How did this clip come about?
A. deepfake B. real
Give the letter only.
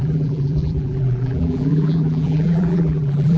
A